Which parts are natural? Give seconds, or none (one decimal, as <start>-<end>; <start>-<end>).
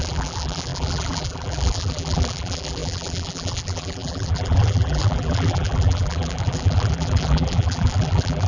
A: none